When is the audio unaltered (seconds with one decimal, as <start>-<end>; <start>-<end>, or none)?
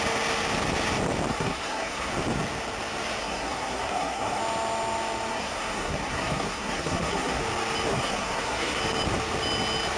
0.0-1.3; 2.1-3.2; 4.4-5.3; 7.4-7.9; 8.8-10.0